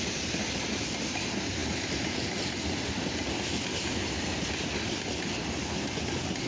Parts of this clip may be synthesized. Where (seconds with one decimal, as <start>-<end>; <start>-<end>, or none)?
none